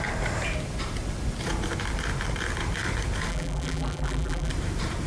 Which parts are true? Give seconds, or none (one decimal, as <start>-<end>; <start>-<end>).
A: 0.0-3.3; 4.5-5.1